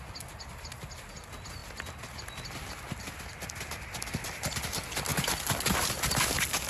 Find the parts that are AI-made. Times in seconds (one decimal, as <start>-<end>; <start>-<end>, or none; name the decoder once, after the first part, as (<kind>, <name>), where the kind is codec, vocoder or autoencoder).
none